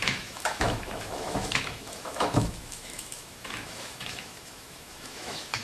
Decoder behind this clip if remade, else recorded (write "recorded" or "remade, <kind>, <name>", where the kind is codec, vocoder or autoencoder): remade, autoencoder, DAC-VAE